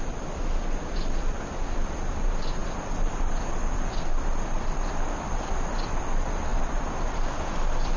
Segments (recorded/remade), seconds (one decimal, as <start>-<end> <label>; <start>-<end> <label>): 0.0-2.6 recorded; 2.6-4.0 remade; 4.0-6.5 recorded; 6.5-7.1 remade; 7.1-8.0 recorded